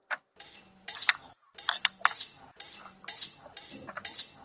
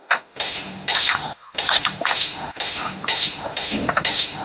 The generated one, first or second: second